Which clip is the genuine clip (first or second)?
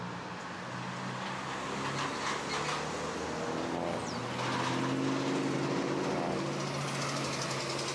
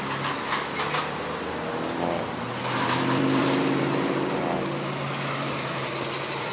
first